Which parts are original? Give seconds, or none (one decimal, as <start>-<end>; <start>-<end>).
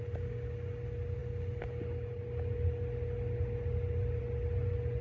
0.0-5.0